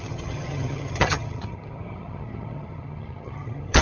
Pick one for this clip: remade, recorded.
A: remade